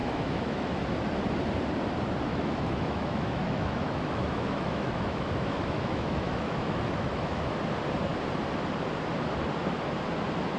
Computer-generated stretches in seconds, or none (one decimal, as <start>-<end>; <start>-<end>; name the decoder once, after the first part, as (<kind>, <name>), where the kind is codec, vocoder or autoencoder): 0.0-0.8 (autoencoder, DAC-VAE); 2.3-7.6